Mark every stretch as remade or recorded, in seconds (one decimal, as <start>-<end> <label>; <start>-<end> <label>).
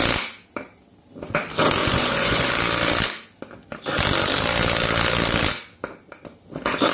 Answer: 0.0-1.8 recorded; 1.8-2.5 remade; 2.5-6.9 recorded